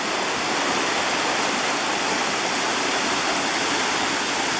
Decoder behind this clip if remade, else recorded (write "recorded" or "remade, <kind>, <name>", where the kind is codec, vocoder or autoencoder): recorded